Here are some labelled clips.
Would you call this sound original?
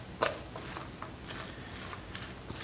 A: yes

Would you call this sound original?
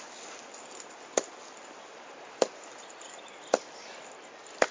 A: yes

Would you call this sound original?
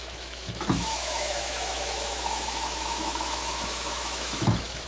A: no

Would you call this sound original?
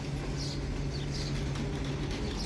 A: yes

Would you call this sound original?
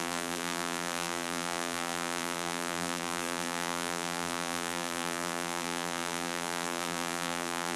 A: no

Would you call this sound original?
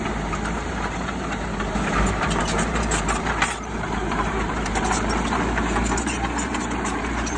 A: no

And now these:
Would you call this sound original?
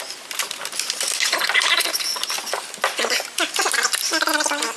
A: yes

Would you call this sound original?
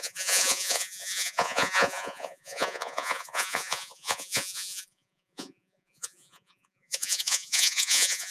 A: no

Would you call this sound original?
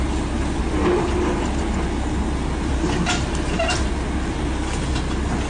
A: yes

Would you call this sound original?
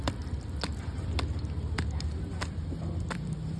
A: yes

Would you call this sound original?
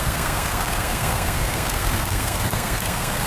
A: no